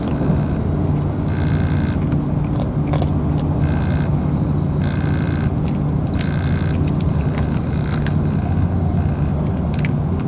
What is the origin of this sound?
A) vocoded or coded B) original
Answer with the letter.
B